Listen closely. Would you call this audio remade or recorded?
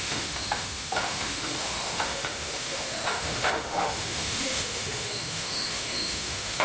remade